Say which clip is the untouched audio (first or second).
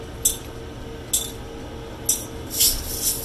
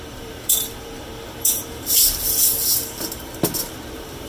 first